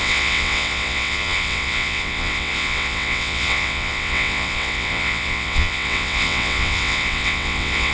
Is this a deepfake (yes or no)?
yes